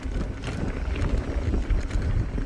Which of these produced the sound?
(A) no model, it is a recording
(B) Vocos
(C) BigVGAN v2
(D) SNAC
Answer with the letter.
A